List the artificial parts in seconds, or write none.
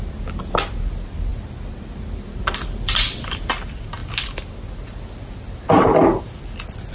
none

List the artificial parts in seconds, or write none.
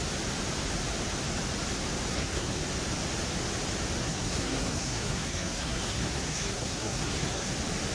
2.1-2.6 (codec, SNAC); 4.0-7.5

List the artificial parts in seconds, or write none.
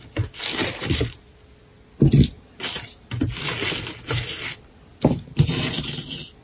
none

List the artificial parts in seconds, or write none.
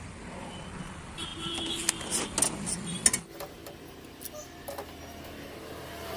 none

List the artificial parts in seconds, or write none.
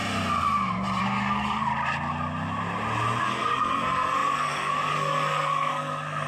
1.0-1.7 (codec, SNAC); 3.2-6.3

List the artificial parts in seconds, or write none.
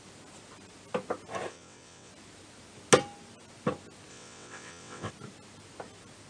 1.5-2.1 (vocoder, WaveNeXt); 4.1-5.1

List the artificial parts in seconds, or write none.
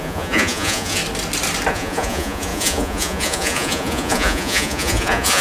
0.0-1.0 (vocoder, Vocos); 1.7-5.4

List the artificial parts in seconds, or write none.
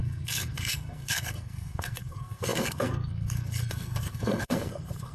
0.0-5.1 (codec, SNAC)